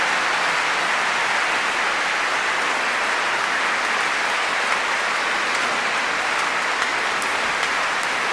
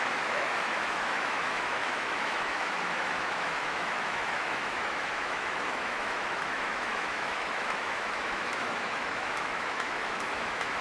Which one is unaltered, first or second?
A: first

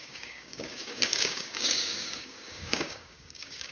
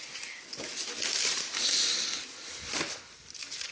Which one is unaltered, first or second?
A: second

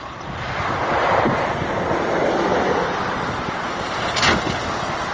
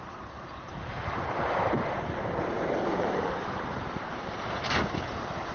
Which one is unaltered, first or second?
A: first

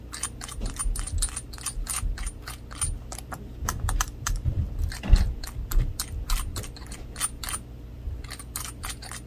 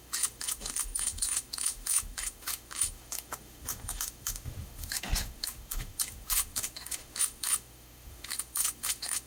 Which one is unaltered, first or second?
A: first